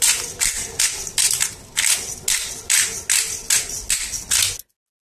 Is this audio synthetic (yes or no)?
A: no